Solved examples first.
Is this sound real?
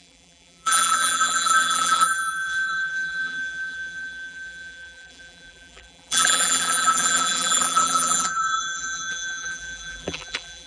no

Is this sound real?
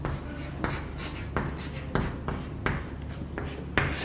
yes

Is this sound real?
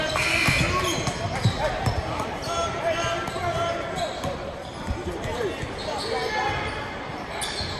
yes